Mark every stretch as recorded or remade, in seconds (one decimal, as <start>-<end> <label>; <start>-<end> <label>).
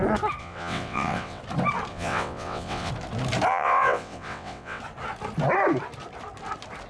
0.0-0.4 recorded; 0.4-1.4 remade; 1.4-1.9 recorded; 1.9-2.9 remade; 2.9-3.5 recorded; 3.5-4.8 remade; 4.8-6.9 recorded